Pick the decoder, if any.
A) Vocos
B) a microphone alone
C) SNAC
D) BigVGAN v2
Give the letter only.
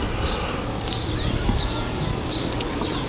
B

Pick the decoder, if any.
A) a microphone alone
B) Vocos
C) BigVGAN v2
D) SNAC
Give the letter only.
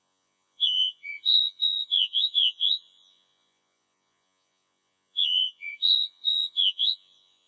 B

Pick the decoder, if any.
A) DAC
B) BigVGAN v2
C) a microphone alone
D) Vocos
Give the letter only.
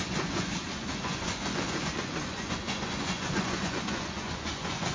D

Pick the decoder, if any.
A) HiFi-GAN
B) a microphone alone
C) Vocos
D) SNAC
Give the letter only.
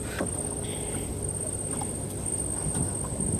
B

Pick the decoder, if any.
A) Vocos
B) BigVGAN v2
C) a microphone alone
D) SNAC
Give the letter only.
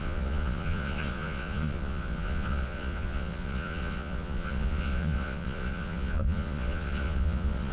A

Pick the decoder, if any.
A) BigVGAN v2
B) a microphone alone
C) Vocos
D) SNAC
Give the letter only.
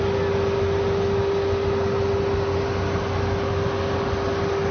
B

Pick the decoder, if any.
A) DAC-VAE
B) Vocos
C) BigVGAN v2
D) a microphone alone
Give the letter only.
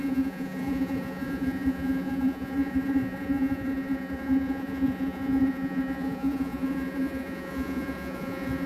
B